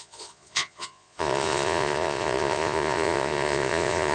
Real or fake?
fake